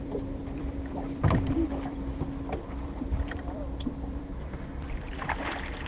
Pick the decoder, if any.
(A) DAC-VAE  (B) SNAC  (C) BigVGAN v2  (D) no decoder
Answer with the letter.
C